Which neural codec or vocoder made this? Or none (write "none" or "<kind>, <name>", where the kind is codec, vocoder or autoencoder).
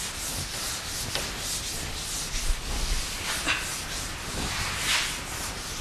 none